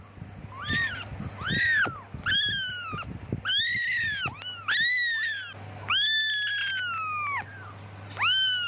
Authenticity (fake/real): real